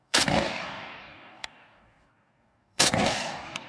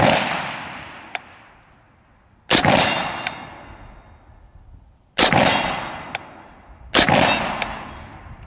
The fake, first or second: first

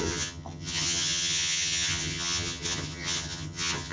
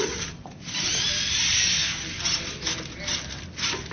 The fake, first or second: first